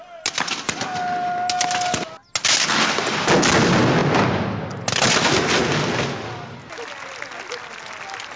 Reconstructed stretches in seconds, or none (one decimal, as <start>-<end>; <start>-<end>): none